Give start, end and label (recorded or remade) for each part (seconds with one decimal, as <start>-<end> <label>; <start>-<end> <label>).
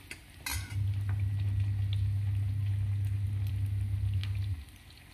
0.0-5.1 recorded